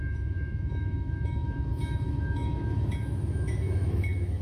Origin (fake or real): fake